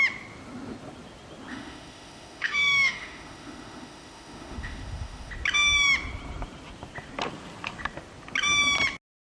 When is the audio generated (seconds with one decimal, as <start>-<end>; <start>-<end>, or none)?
1.5-5.3